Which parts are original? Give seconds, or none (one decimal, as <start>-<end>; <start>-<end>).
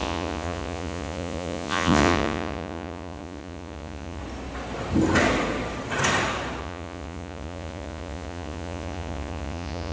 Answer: 4.2-6.6